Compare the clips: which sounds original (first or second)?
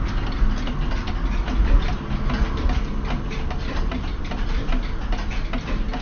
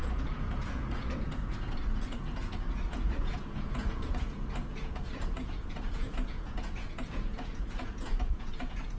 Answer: first